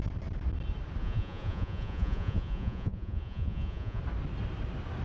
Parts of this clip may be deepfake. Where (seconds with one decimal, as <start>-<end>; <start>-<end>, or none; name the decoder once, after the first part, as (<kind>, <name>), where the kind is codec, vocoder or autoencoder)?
1.0-4.0 (vocoder, Vocos)